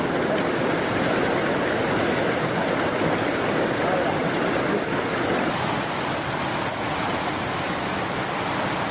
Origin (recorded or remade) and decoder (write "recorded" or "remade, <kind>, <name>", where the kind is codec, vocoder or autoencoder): recorded